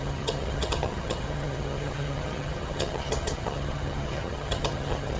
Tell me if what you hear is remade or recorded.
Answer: remade